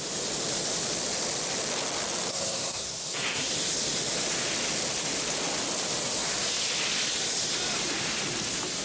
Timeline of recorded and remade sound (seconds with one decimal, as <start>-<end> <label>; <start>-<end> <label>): 0.0-2.3 recorded; 2.3-3.5 remade; 3.5-8.8 recorded

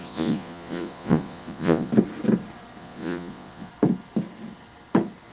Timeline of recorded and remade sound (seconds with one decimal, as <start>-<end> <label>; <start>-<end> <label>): 0.0-1.9 remade; 1.9-2.8 recorded; 2.8-3.7 remade; 3.7-5.3 recorded

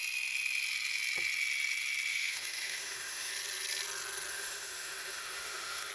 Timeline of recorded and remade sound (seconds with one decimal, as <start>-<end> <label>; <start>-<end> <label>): 0.0-2.1 recorded; 2.1-3.3 remade; 3.3-4.3 recorded; 4.3-5.9 remade

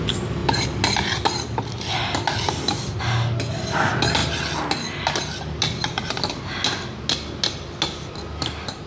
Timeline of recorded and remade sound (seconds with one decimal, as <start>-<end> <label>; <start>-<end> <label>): 0.0-8.9 recorded

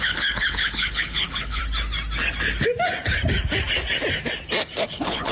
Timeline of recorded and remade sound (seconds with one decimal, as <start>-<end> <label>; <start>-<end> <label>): 0.0-1.6 remade; 1.6-4.8 recorded; 4.8-5.3 remade

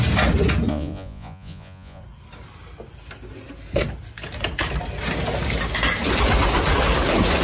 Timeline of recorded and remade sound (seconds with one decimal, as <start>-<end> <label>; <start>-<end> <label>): 0.0-0.7 recorded; 0.7-2.0 remade; 2.0-7.4 recorded

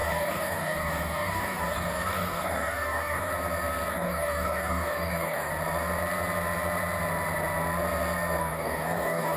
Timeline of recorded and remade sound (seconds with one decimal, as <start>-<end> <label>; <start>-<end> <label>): 0.0-3.3 remade; 3.3-3.9 recorded; 3.9-5.5 remade; 5.5-8.4 recorded; 8.4-9.4 remade